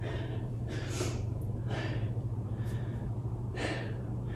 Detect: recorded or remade remade